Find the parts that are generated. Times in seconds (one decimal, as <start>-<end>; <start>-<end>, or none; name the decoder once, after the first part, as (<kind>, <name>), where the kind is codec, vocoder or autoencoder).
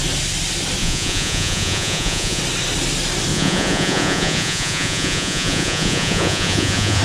0.8-2.4 (vocoder, Vocos); 3.3-7.0